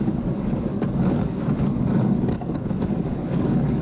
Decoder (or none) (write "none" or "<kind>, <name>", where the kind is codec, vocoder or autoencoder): codec, DAC